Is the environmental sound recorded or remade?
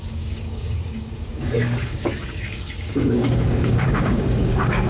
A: remade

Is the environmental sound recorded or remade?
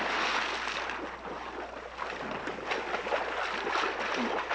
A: recorded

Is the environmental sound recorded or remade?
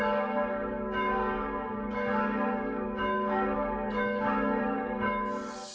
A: remade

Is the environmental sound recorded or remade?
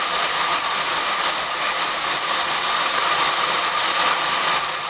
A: recorded